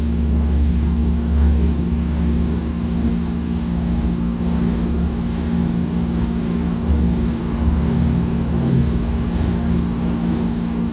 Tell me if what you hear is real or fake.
fake